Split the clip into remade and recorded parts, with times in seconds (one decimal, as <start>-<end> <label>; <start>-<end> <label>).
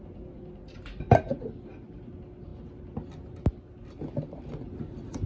0.0-5.3 recorded